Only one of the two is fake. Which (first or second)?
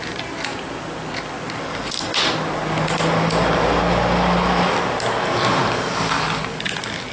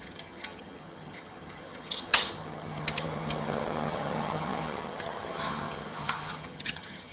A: second